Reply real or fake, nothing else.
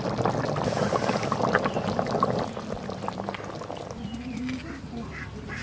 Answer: real